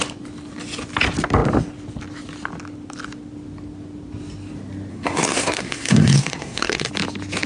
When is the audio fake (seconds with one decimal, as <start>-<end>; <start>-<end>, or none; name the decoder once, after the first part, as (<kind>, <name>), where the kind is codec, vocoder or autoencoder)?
4.9-6.9 (codec, SNAC)